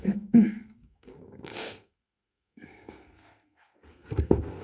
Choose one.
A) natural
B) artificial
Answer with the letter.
B